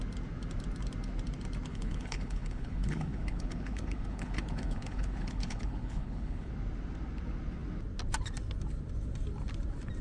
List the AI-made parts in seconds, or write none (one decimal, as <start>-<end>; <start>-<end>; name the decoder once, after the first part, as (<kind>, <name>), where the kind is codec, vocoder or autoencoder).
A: 1.7-6.5 (codec, HILCodec)

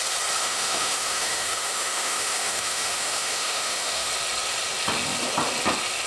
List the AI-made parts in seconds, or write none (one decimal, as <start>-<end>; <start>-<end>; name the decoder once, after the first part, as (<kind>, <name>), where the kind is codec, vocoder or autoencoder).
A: 0.4-4.1 (autoencoder, DAC-VAE)

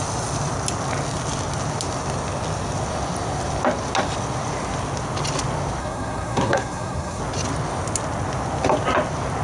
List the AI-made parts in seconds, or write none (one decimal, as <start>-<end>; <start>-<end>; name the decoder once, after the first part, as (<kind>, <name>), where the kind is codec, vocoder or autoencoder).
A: 5.8-7.2 (codec, SNAC)

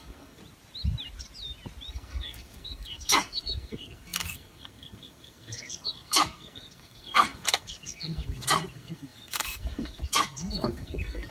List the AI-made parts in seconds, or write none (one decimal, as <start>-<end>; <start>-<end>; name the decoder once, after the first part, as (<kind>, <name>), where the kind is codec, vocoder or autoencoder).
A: 0.0-0.4 (codec, SNAC); 1.9-11.3

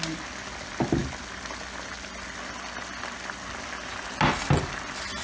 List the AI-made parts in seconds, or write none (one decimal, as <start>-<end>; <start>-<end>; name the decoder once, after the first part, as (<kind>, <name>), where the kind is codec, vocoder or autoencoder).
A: none

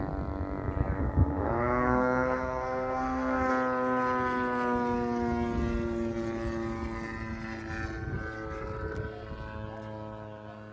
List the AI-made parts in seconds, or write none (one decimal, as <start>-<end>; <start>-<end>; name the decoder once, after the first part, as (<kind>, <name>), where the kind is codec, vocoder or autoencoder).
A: 1.0-3.5 (codec, SNAC)

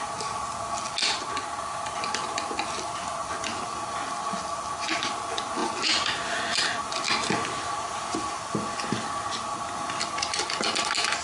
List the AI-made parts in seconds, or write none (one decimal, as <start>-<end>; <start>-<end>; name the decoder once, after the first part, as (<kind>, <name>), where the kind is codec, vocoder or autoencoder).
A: none